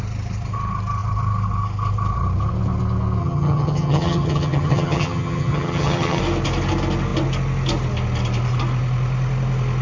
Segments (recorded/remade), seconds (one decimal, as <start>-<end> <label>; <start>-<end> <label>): 0.0-3.2 recorded; 3.2-6.2 remade; 6.2-9.8 recorded